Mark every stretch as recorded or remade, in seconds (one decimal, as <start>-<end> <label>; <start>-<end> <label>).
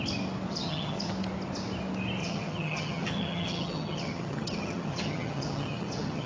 0.0-0.5 recorded; 0.5-1.1 remade; 1.1-2.2 recorded; 2.2-6.3 remade